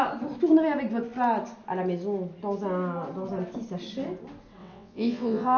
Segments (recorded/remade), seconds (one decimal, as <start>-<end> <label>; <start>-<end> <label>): 0.0-4.6 recorded; 4.6-5.6 remade